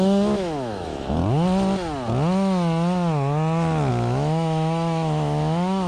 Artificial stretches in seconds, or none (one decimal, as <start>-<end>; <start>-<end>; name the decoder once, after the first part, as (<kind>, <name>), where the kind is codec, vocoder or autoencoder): 0.0-1.2 (autoencoder, DAC-VAE); 3.9-5.9